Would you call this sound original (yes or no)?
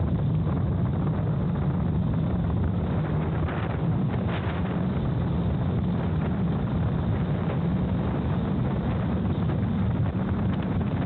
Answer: yes